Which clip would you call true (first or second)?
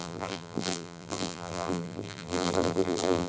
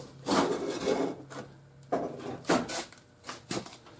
second